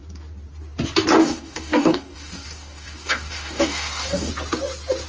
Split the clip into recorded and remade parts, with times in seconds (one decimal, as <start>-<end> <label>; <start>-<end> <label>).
0.0-1.2 recorded; 1.2-4.3 remade; 4.3-5.1 recorded